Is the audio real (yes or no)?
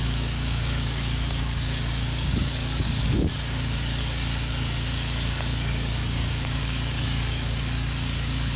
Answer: no